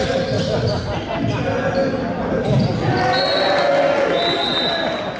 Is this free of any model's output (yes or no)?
yes